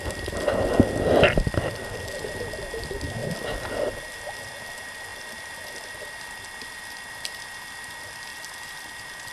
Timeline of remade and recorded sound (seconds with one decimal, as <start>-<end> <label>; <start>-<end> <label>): 0.0-5.1 recorded; 5.1-6.7 remade; 6.7-8.3 recorded; 8.3-9.3 remade